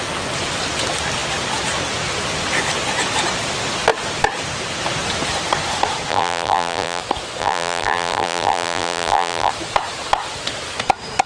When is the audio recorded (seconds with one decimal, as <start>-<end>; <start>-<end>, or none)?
0.0-6.1; 7.0-7.4; 9.5-11.3